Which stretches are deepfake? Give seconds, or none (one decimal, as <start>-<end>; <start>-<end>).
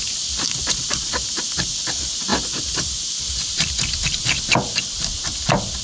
2.3-3.7